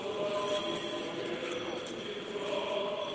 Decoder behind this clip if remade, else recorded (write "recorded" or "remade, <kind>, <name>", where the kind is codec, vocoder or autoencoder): recorded